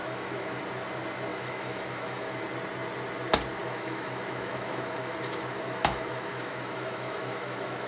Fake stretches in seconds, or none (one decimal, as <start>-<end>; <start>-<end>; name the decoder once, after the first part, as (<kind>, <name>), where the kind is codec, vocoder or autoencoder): 0.0-0.6 (autoencoder, DAC-VAE); 1.3-2.4; 3.6-7.9